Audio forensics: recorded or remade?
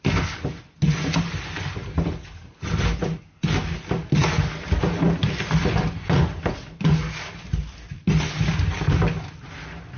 recorded